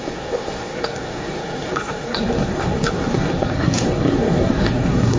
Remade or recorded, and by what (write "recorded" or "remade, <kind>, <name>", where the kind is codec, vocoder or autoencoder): remade, codec, SNAC